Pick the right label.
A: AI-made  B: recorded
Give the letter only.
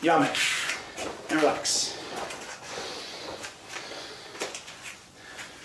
A